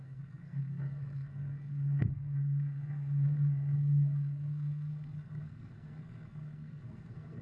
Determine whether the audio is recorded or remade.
remade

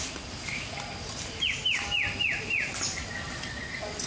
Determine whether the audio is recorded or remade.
recorded